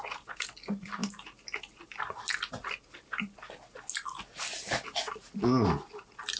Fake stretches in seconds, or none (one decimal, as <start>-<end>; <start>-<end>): none